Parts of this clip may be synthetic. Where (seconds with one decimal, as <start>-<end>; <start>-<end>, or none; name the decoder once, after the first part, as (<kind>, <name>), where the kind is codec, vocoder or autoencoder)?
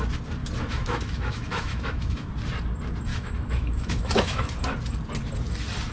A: 0.4-2.3 (autoencoder, DAC-VAE); 3.1-4.5